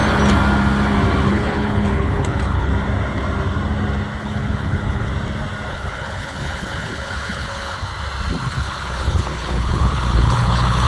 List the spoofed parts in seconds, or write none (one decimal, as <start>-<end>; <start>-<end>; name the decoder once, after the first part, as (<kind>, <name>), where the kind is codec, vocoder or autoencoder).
1.3-2.7 (codec, HILCodec); 4.2-5.1; 5.7-7.9; 8.5-10.9